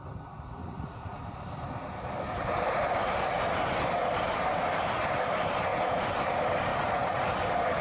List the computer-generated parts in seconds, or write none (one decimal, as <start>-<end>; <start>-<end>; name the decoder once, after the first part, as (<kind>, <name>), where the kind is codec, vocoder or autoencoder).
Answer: 0.6-1.2 (vocoder, Vocos); 6.7-7.3